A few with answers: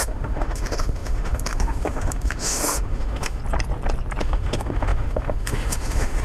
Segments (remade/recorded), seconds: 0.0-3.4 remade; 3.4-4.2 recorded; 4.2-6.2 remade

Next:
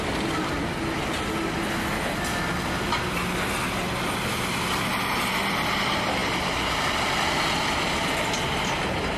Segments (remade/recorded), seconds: 0.0-9.2 recorded

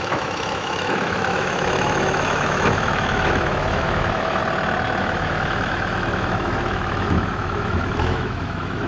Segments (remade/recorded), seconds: 0.0-4.4 remade; 4.4-5.0 recorded; 5.0-8.9 remade

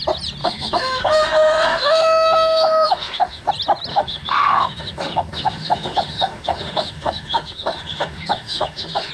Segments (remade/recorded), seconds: 0.0-0.4 recorded; 0.4-3.5 remade; 3.5-3.9 recorded; 3.9-9.1 remade